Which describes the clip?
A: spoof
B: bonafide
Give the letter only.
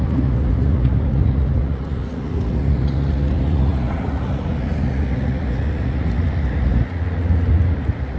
A